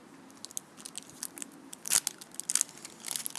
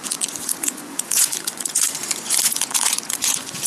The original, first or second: first